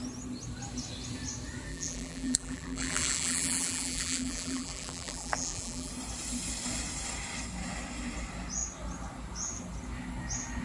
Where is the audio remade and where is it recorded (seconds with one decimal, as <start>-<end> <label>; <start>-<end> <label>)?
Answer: 0.0-1.7 recorded; 1.7-5.9 remade; 5.9-10.6 recorded